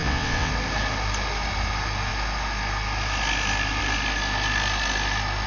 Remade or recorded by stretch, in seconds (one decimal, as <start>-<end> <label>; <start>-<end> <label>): 0.0-0.5 remade; 0.5-5.5 recorded